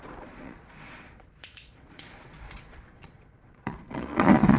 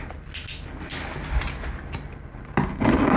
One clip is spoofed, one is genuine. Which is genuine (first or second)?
second